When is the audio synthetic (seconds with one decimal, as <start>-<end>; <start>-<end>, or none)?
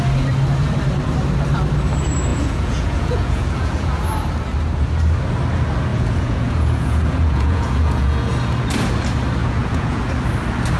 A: 2.3-4.0; 5.9-8.3; 9.4-10.0